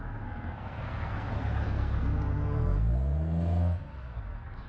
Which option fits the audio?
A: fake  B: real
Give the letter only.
A